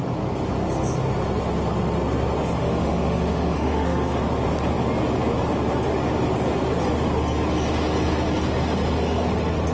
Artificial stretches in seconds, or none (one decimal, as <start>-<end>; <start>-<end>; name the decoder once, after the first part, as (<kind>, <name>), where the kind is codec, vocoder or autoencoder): 2.6-4.2 (autoencoder, DAC-VAE)